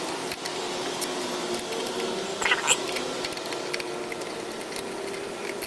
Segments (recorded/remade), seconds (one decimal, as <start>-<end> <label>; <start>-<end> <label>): 0.0-5.7 recorded